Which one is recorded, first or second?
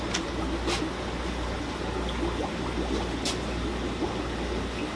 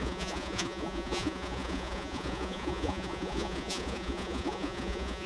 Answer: first